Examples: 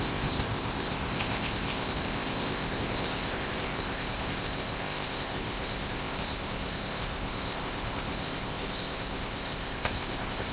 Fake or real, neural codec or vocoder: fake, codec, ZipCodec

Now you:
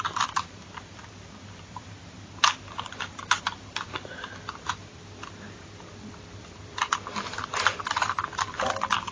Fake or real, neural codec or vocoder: fake, vocoder, BigVGAN v2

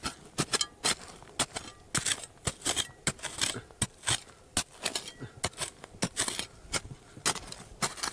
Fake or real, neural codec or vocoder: real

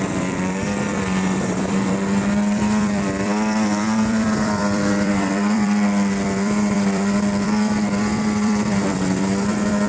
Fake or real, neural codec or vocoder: fake, vocoder, BigVGAN v2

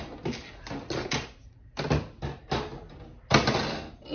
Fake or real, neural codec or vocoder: real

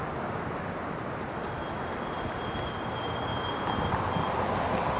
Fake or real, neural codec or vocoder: real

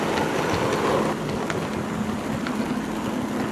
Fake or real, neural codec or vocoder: real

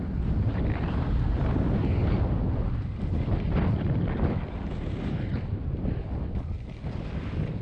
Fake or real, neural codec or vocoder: real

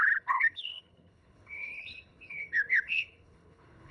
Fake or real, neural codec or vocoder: fake, codec, HILCodec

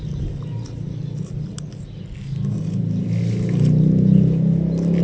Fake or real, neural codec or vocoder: real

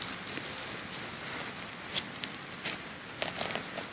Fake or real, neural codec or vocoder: real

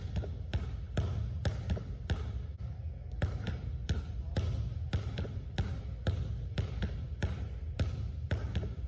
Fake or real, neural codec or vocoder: real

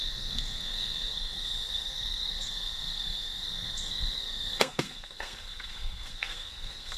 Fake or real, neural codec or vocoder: fake, codec, SNAC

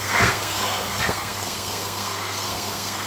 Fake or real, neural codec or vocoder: fake, codec, SNAC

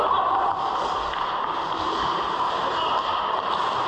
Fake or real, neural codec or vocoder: real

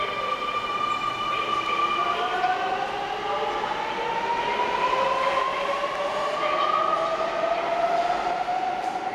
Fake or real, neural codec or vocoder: real